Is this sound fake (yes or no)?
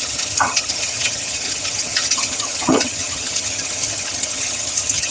yes